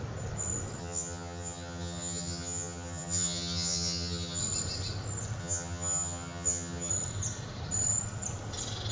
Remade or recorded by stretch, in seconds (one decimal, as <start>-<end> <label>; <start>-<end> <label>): 0.0-0.8 recorded; 0.8-4.4 remade; 4.4-5.4 recorded; 5.4-6.9 remade; 6.9-8.9 recorded